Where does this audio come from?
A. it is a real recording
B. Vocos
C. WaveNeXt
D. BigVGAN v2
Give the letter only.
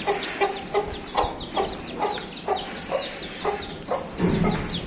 A